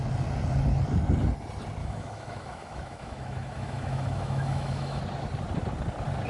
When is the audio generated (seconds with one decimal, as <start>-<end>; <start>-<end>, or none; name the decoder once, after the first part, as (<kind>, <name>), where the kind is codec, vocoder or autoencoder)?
1.8-5.0 (autoencoder, DAC-VAE)